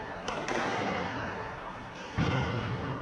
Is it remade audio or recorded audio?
remade